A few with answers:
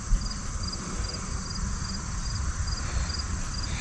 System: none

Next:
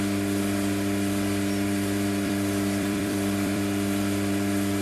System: vocoder, BigVGAN v2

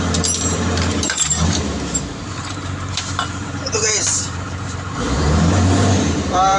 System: vocoder, BigVGAN v2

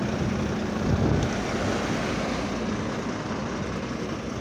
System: none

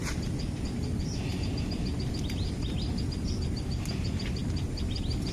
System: none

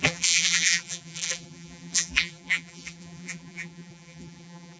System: vocoder, BigVGAN v2